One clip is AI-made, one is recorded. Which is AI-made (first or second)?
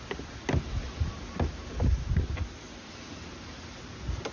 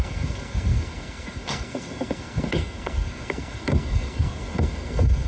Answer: second